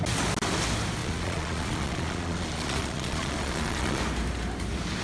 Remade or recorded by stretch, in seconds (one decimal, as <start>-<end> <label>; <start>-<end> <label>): 0.0-1.0 recorded; 1.0-4.0 remade; 4.0-5.0 recorded